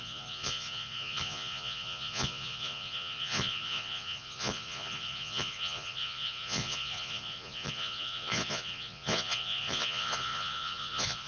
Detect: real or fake fake